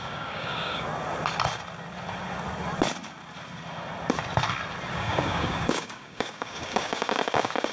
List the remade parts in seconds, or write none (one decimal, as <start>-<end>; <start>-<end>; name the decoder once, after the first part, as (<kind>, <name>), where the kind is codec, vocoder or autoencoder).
0.0-0.9 (codec, DAC); 4.9-7.7